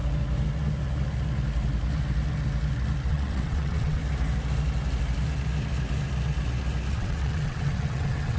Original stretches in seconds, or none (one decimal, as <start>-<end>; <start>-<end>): 0.0-3.1; 4.0-6.9